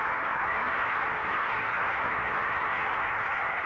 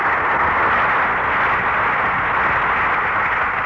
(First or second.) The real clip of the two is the second